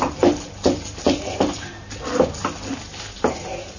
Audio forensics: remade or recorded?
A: recorded